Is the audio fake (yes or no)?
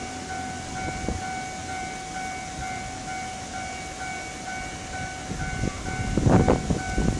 no